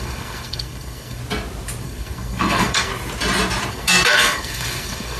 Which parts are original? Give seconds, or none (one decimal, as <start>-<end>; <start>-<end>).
1.2-1.8; 2.9-3.7